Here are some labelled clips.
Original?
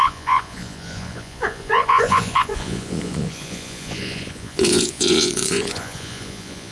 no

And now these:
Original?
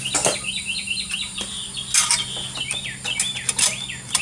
yes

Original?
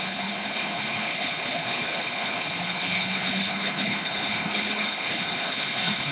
no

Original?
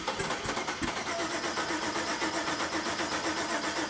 yes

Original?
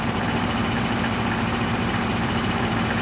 no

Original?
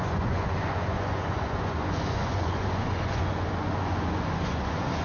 no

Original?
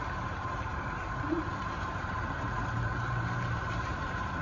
no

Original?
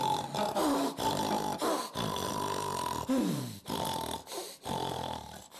yes